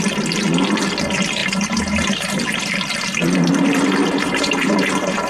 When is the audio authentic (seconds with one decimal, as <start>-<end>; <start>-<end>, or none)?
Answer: 0.0-1.4; 2.7-4.0